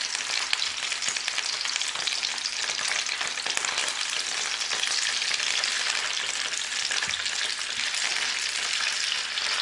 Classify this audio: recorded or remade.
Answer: recorded